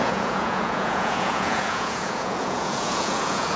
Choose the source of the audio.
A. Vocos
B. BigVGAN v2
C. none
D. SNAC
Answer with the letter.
A